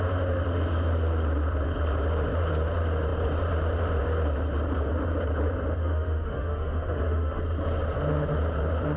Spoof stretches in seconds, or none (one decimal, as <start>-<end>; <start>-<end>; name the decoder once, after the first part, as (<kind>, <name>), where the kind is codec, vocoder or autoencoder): 5.8-7.4 (autoencoder, DAC-VAE)